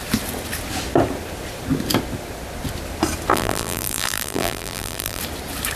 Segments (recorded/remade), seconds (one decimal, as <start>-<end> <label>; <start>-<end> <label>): 0.0-3.3 recorded; 3.3-5.2 remade; 5.2-5.8 recorded